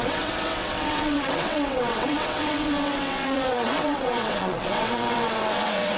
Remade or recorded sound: remade